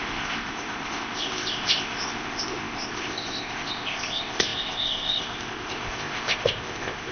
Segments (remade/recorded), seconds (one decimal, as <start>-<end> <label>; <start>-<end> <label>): 0.0-7.1 remade